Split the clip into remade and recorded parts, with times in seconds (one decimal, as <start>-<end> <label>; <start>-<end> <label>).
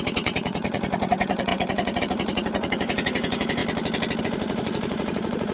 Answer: 0.0-3.6 remade; 3.6-4.2 recorded; 4.2-5.5 remade